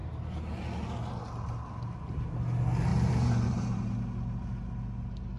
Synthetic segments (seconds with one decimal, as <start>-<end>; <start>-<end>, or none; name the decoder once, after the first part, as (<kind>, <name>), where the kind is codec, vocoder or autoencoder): 2.9-4.0 (vocoder, BigVGAN v2)